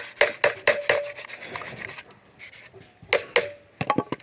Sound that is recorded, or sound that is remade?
recorded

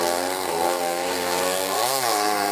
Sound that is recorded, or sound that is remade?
remade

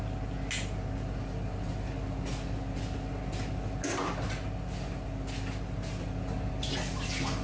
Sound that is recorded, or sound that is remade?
recorded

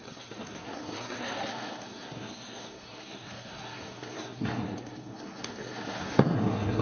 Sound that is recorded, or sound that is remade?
remade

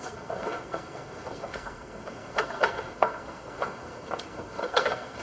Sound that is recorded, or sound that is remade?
remade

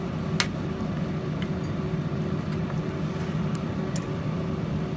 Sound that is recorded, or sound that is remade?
recorded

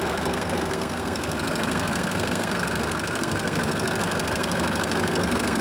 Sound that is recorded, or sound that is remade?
remade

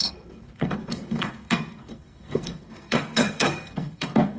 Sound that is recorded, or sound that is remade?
remade